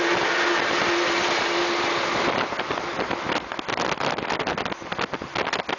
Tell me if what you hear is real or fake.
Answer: real